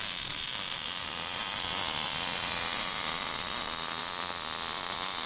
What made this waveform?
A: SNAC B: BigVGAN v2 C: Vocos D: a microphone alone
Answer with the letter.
D